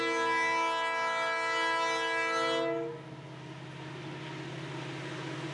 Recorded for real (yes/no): yes